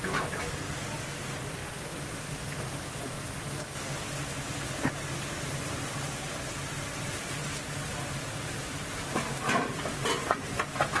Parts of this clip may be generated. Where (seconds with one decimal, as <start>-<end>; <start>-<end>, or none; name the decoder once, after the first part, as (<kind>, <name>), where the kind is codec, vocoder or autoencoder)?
none